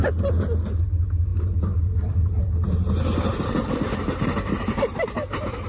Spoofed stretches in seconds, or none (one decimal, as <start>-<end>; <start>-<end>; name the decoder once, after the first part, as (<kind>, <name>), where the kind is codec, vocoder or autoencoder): 3.3-5.7 (vocoder, BigVGAN v2)